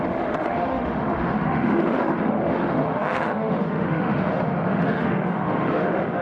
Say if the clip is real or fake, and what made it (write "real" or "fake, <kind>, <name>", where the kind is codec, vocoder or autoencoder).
fake, autoencoder, DAC-VAE